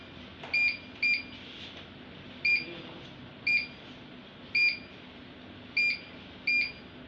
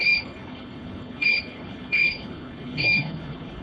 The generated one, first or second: second